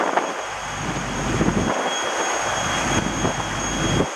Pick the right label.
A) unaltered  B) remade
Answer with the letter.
A